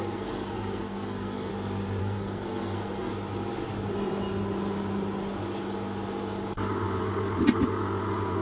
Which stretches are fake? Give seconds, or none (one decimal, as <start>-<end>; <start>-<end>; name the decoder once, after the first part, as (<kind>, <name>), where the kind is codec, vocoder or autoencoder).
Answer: 0.0-1.5 (codec, SNAC); 2.0-3.1